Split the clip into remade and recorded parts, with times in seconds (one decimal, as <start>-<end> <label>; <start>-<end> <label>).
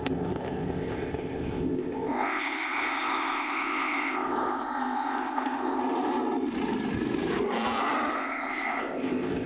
0.0-5.8 remade; 5.8-8.1 recorded; 8.1-9.5 remade